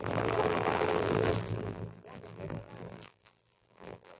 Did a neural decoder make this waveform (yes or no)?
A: yes